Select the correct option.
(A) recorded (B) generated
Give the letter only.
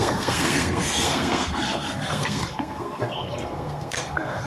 B